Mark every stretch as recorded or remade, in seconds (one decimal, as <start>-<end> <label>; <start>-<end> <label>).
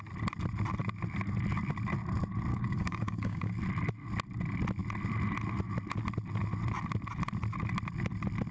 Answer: 0.0-2.5 recorded; 2.5-3.6 remade; 3.6-8.5 recorded